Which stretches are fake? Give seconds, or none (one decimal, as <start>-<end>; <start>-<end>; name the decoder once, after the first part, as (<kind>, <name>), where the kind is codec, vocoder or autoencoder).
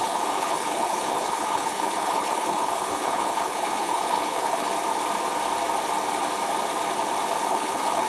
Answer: 0.0-4.7 (codec, HILCodec); 7.5-8.1